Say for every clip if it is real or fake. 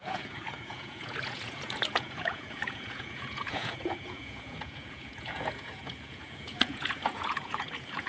fake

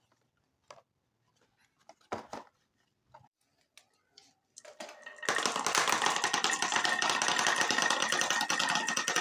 real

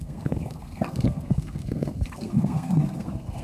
fake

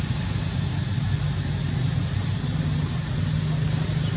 real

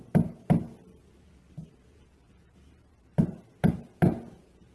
real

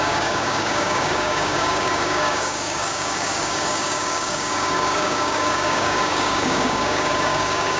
fake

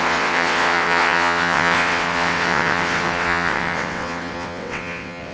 fake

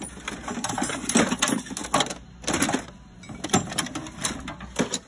real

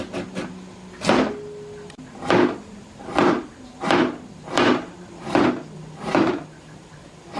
real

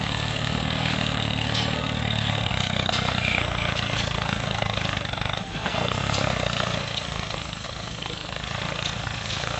fake